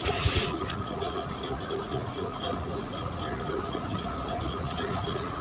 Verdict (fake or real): fake